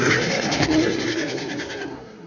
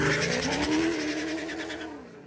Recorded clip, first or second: second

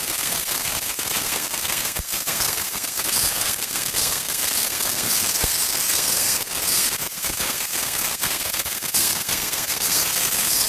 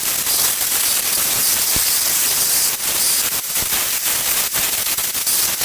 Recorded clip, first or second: second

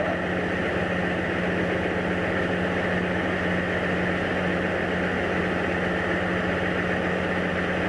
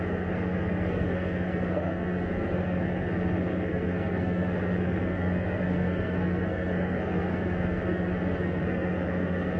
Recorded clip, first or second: first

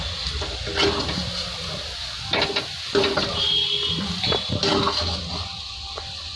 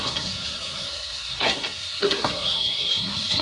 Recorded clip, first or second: first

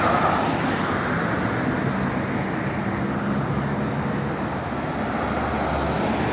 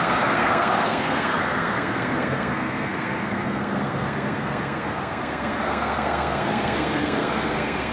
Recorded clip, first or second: first